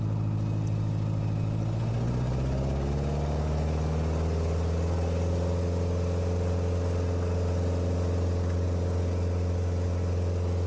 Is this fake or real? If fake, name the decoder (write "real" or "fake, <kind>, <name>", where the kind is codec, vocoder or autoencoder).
real